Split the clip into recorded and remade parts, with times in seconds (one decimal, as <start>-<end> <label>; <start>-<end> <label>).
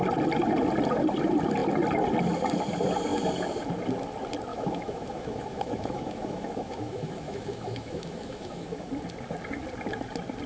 0.0-4.5 recorded; 4.5-8.9 remade; 8.9-10.5 recorded